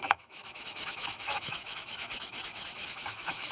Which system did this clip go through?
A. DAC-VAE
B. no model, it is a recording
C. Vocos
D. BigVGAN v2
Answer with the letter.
A